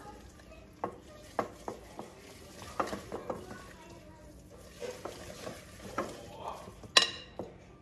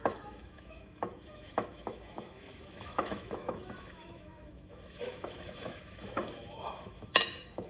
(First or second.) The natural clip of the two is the first